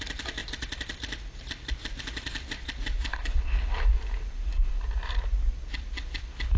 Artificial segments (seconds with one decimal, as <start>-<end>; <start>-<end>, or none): 3.1-3.7